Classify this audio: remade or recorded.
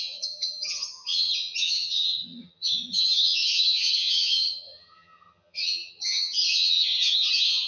remade